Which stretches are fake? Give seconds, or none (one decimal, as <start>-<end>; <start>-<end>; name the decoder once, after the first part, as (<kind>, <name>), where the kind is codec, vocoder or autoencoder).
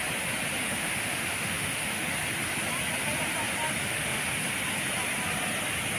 0.6-2.1 (autoencoder, DAC-VAE); 3.8-4.3